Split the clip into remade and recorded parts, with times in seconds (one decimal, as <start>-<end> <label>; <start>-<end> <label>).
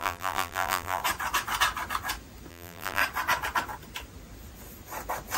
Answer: 0.0-1.0 remade; 1.0-2.5 recorded; 2.5-3.0 remade; 3.0-5.4 recorded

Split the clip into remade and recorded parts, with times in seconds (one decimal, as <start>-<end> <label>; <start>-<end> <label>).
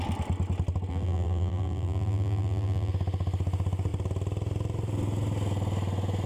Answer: 0.0-0.9 recorded; 0.9-2.9 remade; 2.9-6.3 recorded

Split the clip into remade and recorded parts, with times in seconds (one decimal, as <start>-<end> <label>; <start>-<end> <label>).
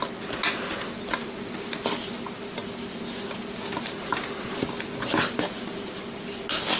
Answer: 0.0-6.8 recorded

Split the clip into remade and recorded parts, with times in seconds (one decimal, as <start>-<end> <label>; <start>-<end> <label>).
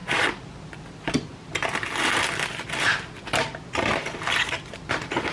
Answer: 0.0-0.7 recorded; 0.7-1.3 remade; 1.3-4.5 recorded; 4.5-5.3 remade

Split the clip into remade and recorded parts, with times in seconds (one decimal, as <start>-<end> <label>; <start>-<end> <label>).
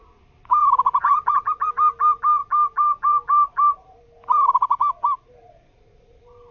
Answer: 0.0-0.6 recorded; 0.6-1.7 remade; 1.7-2.4 recorded; 2.4-5.8 remade; 5.8-6.5 recorded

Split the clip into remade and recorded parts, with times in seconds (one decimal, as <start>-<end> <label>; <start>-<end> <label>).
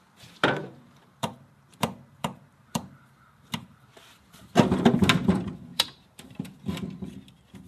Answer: 0.0-0.6 recorded; 0.6-3.9 remade; 3.9-5.7 recorded; 5.7-6.6 remade; 6.6-7.7 recorded